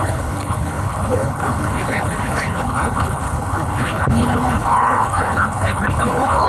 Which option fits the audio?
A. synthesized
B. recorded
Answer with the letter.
A